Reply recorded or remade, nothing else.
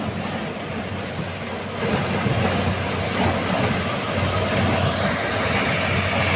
recorded